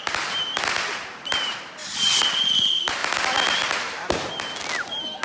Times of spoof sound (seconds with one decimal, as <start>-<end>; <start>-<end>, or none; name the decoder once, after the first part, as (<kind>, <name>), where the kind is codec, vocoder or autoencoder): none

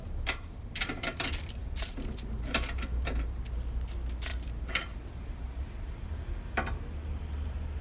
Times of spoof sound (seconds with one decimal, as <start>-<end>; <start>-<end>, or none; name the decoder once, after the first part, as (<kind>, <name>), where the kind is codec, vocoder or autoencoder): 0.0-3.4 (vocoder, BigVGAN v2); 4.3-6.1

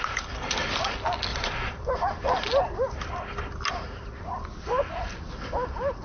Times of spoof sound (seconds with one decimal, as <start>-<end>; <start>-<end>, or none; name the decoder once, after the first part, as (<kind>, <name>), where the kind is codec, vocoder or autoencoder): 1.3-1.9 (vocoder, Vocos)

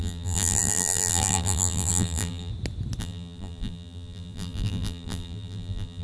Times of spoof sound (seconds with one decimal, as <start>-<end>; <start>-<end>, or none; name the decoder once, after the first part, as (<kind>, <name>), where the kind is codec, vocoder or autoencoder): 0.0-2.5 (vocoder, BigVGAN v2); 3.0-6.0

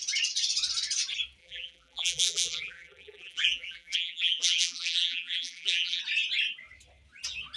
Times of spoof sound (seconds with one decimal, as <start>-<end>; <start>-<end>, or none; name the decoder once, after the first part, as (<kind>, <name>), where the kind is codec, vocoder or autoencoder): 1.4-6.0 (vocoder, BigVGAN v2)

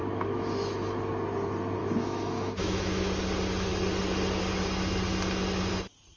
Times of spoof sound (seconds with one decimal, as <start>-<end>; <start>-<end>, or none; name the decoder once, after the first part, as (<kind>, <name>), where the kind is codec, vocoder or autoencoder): 0.0-1.1 (autoencoder, DAC-VAE); 1.8-3.0

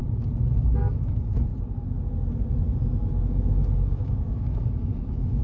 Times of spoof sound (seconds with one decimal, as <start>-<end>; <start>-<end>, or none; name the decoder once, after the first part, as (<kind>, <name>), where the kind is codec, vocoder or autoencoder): 0.8-1.5 (autoencoder, DAC-VAE); 3.1-5.4

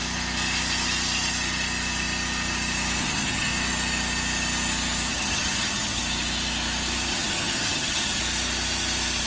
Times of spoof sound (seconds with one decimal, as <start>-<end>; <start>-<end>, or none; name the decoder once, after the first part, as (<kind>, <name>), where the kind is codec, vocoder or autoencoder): 3.0-3.5 (vocoder, HiFi-GAN); 5.1-6.0; 7.1-8.2